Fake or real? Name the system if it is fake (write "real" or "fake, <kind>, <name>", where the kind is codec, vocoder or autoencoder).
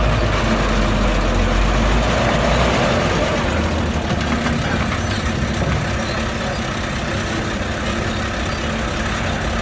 real